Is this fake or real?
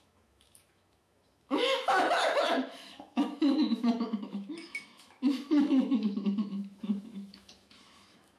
fake